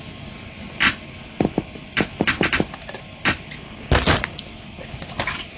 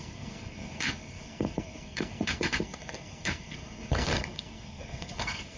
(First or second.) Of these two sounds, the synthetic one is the second